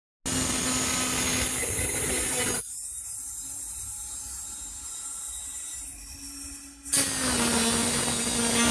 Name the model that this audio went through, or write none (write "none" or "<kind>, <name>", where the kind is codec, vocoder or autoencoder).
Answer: none